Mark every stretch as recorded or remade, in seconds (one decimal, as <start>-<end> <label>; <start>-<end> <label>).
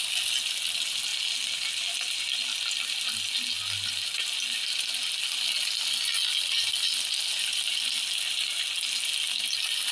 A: 0.0-9.9 recorded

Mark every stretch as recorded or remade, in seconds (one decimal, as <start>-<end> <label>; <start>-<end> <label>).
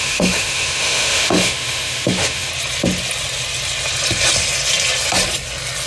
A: 0.0-2.5 remade; 2.5-5.9 recorded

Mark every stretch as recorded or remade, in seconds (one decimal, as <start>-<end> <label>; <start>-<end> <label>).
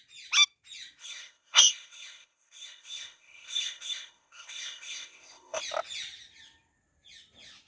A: 0.0-1.0 recorded; 1.0-5.6 remade; 5.6-7.7 recorded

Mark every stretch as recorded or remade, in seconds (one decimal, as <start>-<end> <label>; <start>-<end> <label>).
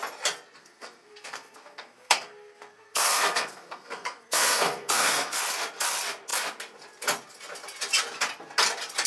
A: 0.0-0.6 recorded; 0.6-5.4 remade; 5.4-9.1 recorded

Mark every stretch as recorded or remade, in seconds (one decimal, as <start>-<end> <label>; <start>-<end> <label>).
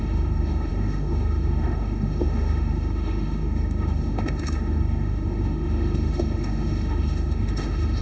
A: 0.0-8.0 remade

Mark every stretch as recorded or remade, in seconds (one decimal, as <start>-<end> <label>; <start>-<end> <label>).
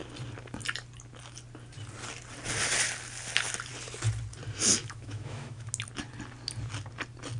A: 0.0-4.8 recorded; 4.8-5.7 remade; 5.7-7.4 recorded